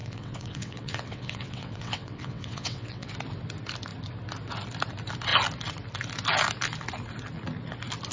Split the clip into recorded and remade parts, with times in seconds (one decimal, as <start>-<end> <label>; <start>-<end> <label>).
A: 0.0-3.1 remade; 3.1-8.1 recorded